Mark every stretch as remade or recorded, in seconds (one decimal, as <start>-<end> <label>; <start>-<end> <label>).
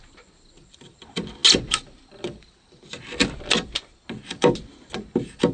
0.0-5.5 recorded